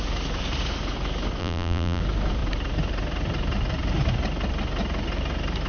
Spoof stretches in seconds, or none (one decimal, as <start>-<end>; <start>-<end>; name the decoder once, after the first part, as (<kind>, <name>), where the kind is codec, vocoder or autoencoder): 1.4-2.0 (vocoder, BigVGAN v2)